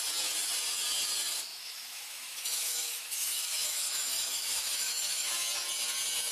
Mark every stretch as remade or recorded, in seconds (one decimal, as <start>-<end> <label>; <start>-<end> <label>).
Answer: 0.0-1.5 recorded; 1.5-5.3 remade; 5.3-6.3 recorded